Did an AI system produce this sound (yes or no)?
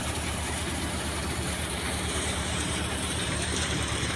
yes